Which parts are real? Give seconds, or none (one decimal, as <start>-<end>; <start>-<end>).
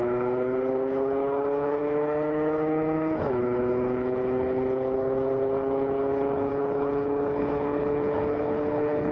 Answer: none